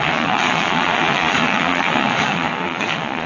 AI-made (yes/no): yes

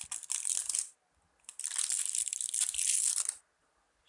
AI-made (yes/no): no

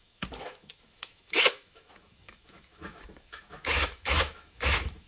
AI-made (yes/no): yes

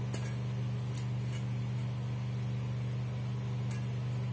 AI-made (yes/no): no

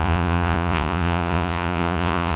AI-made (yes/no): yes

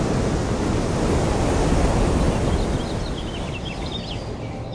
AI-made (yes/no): no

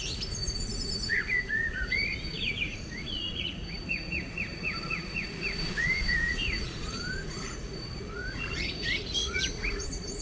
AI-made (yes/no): yes